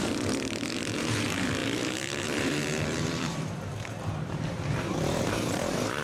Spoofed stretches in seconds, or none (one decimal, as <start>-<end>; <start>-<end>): 0.0-6.0